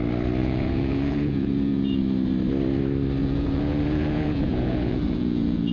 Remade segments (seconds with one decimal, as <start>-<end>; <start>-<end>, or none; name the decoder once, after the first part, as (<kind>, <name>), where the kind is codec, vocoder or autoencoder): 0.4-2.0 (vocoder, Vocos); 3.2-5.7